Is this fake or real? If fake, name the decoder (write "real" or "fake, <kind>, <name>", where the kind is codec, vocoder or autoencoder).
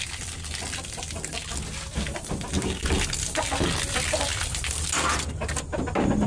real